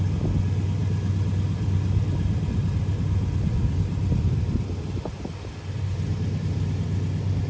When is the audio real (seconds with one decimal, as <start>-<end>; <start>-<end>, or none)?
0.0-7.5